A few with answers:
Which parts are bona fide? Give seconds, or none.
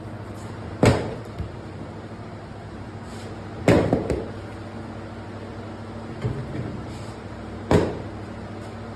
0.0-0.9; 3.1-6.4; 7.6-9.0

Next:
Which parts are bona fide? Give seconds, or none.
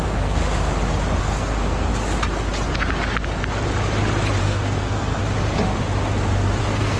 0.4-1.2; 1.9-4.4; 5.2-6.6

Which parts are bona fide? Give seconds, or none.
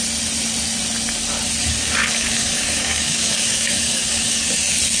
0.0-2.0; 4.5-5.0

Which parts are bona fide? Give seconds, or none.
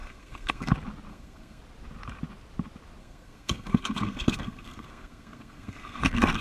0.7-1.1; 1.6-3.0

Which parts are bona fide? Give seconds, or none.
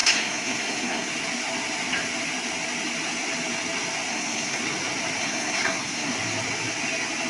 1.1-4.1; 4.6-5.2; 6.1-7.3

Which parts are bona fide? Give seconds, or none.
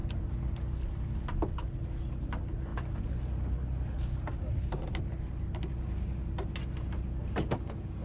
0.0-8.0